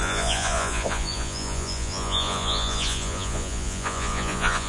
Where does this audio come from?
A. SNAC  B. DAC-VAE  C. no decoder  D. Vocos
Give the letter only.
D